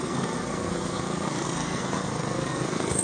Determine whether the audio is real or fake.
fake